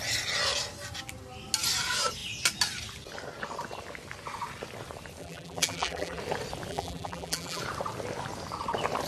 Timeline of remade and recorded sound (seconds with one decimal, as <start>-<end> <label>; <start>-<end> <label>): 0.0-5.2 recorded; 5.2-6.2 remade; 6.2-6.7 recorded; 6.7-7.6 remade; 7.6-9.1 recorded